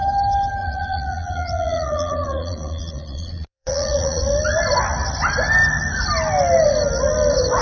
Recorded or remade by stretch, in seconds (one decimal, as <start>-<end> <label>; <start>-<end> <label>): 0.0-0.6 recorded; 0.6-4.2 remade; 4.2-7.6 recorded

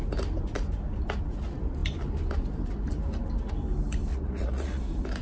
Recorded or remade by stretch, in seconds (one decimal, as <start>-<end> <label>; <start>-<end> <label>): 0.0-4.1 recorded; 4.1-4.8 remade; 4.8-5.2 recorded

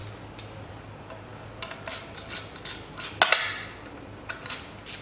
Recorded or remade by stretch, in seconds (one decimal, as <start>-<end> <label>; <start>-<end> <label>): 0.0-5.0 recorded

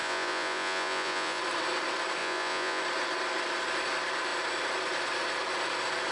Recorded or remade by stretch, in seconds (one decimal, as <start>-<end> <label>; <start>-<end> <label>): 0.0-1.4 remade; 1.4-2.2 recorded; 2.2-2.8 remade; 2.8-6.1 recorded